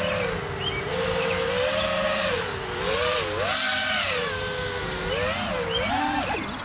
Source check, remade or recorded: recorded